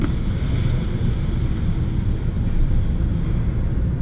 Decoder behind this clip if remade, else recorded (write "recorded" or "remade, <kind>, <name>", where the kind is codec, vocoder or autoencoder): recorded